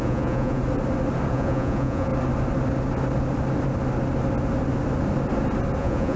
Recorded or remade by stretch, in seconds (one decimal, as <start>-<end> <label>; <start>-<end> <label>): 0.0-0.6 remade; 0.6-1.3 recorded; 1.3-2.1 remade; 2.1-5.8 recorded; 5.8-6.2 remade